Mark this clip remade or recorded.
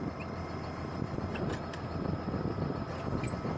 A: recorded